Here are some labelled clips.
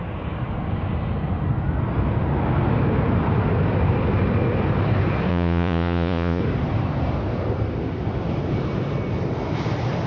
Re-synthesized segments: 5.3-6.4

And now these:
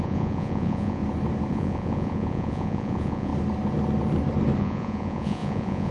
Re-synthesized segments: 0.0-1.0; 1.5-3.3; 4.6-5.9

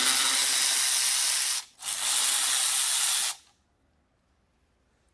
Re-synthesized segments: none

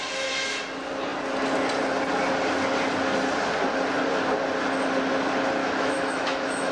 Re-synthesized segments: 5.6-6.7

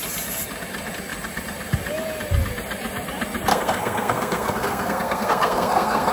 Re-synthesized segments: 3.5-6.1